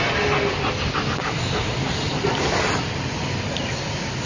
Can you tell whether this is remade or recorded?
recorded